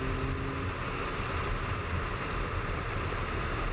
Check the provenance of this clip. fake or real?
real